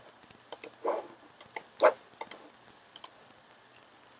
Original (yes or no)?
yes